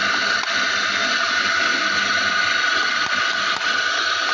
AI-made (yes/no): no